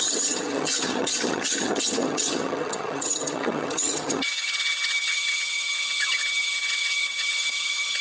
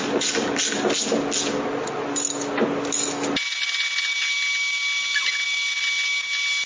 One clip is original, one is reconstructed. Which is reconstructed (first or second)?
first